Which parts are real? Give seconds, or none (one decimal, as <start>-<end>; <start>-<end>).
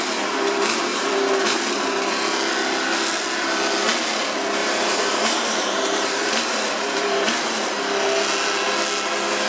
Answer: 0.0-0.9; 2.1-4.6; 7.8-9.5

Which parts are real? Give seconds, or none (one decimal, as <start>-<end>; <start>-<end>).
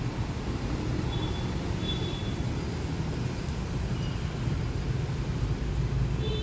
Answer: 0.0-6.4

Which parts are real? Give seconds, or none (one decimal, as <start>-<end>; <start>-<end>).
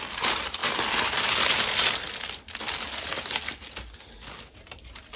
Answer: 0.0-5.2